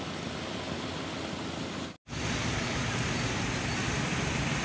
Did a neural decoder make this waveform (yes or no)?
no